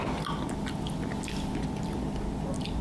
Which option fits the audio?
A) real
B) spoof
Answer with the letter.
A